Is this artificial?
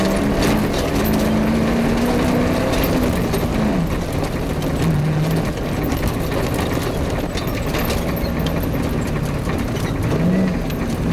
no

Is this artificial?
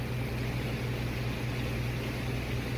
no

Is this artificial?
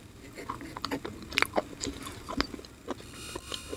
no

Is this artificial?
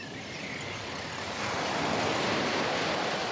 no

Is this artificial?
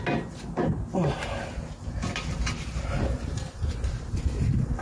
no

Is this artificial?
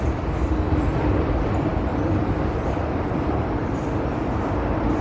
yes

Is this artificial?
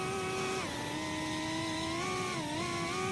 no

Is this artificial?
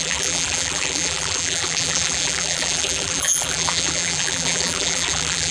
yes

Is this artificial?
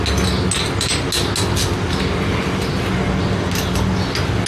no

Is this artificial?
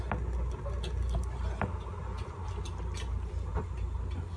no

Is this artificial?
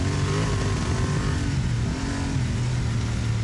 no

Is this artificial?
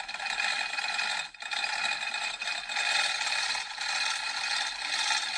no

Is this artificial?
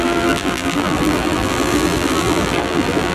yes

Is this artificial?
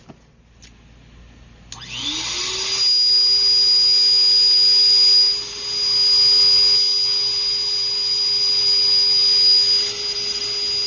no